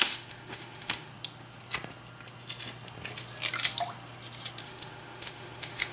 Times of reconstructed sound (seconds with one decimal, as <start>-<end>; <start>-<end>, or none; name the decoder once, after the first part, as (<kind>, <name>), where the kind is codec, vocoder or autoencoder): 0.0-1.1 (autoencoder, DAC-VAE); 4.6-5.9

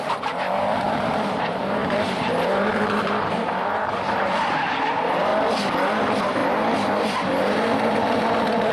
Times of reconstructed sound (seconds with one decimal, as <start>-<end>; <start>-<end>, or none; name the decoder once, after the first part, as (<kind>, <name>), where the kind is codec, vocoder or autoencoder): 0.0-5.3 (vocoder, BigVGAN v2); 6.0-6.4; 7.4-8.7

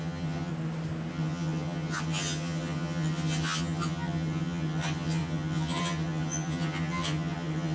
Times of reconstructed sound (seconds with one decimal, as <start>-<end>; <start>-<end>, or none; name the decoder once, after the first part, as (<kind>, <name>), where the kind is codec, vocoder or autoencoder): 0.0-0.5 (vocoder, HiFi-GAN); 1.1-7.7

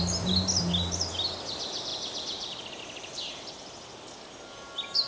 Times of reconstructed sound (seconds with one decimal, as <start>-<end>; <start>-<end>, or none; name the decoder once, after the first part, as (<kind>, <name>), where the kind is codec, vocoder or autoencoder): none

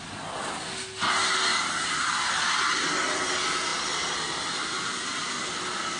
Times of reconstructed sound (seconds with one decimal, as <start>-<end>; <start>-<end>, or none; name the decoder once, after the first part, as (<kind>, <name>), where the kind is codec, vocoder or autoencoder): 1.5-2.3 (vocoder, BigVGAN v2)